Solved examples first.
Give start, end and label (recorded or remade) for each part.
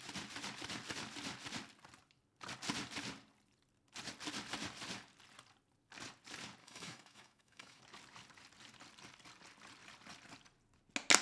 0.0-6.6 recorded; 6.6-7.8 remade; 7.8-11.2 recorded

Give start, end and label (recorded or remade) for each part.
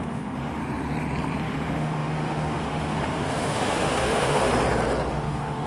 0.0-0.6 remade; 0.6-1.4 recorded; 1.4-4.5 remade; 4.5-5.1 recorded; 5.1-5.7 remade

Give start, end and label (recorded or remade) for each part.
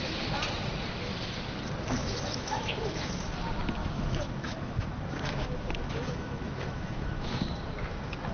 0.0-2.0 recorded; 2.0-3.3 remade; 3.3-3.8 recorded; 3.8-7.4 remade; 7.4-8.3 recorded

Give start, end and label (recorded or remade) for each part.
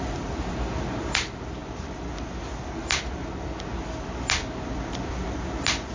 0.0-5.9 recorded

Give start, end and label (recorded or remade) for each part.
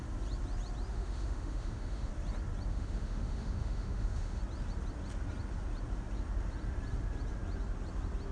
0.0-0.9 recorded; 0.9-2.1 remade; 2.1-2.7 recorded; 2.7-4.4 remade; 4.4-8.3 recorded